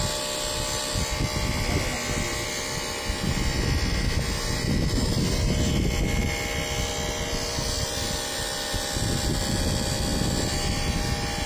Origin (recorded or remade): recorded